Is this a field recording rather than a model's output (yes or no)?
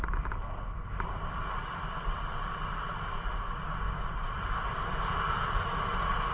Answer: yes